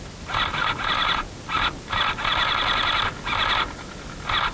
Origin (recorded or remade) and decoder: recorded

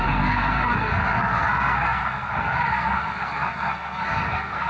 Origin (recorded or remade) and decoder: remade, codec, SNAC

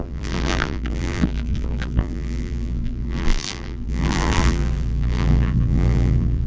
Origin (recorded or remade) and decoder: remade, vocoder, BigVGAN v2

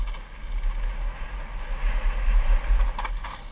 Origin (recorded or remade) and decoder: recorded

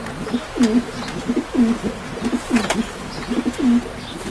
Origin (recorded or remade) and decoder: recorded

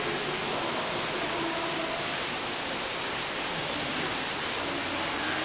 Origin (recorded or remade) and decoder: recorded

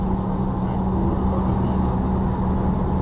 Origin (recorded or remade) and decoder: recorded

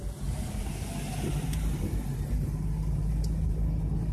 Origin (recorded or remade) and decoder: recorded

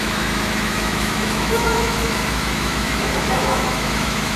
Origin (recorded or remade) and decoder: remade, autoencoder, DAC-VAE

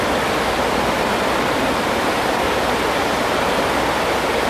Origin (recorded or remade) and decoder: remade, vocoder, BigVGAN v2